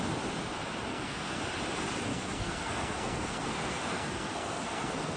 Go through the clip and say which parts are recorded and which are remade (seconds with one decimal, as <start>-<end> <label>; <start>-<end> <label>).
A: 0.0-0.9 recorded; 0.9-1.4 remade; 1.4-2.1 recorded; 2.1-5.2 remade